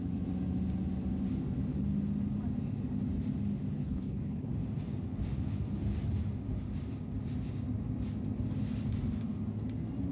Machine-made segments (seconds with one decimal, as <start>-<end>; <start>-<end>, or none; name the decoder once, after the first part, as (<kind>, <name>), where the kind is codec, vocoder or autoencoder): 3.8-4.5 (codec, HILCodec)